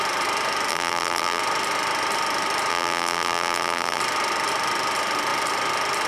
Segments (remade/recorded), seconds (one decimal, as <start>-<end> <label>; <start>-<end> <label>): 0.0-0.7 recorded; 0.7-1.4 remade; 1.4-2.7 recorded; 2.7-4.0 remade; 4.0-6.1 recorded